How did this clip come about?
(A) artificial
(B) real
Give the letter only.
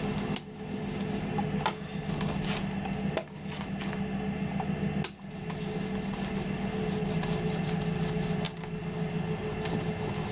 B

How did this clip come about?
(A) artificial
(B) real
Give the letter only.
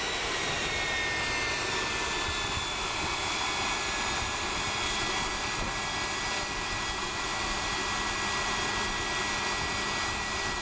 B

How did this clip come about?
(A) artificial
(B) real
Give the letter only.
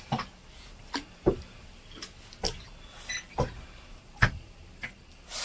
B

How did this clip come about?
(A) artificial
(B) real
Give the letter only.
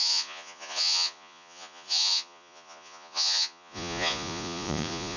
A